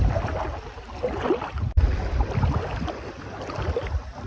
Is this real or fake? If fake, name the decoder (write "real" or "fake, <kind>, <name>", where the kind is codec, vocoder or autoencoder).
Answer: real